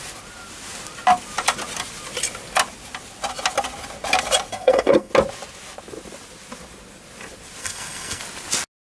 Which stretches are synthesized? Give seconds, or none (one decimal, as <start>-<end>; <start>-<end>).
4.5-5.1; 7.6-8.2

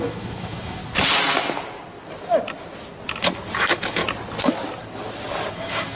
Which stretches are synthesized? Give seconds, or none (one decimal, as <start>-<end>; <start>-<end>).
0.0-0.8; 3.6-4.0; 5.5-6.0

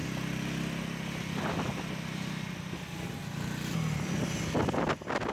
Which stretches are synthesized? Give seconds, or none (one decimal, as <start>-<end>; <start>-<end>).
none

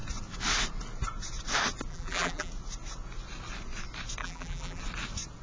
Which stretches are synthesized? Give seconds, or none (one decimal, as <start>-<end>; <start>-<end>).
1.9-2.5; 4.2-4.8

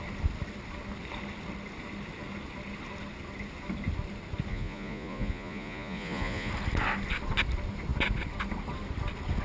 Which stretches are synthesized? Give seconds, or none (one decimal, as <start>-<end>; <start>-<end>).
4.5-6.5

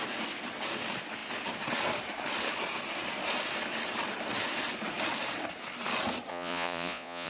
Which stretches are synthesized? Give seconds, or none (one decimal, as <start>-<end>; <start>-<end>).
6.3-7.3